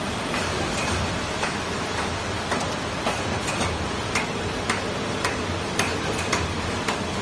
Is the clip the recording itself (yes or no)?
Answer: no